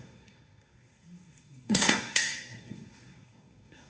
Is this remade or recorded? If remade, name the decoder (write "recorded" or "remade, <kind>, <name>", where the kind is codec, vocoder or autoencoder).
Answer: remade, codec, SNAC